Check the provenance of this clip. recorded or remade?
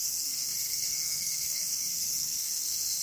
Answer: remade